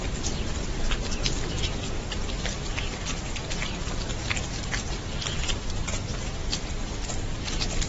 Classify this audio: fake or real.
real